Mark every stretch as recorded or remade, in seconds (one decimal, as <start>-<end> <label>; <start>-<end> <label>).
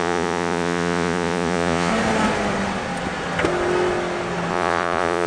0.0-1.9 remade; 1.9-4.5 recorded; 4.5-5.3 remade